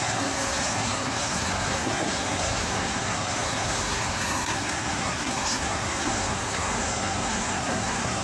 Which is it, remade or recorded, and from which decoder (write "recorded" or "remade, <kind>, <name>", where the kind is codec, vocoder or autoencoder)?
remade, codec, SNAC